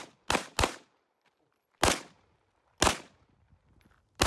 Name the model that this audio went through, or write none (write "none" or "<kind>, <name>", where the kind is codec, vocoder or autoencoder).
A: none